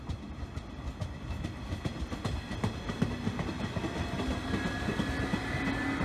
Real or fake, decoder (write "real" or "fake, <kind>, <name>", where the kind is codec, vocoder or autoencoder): real